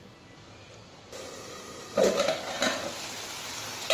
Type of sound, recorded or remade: recorded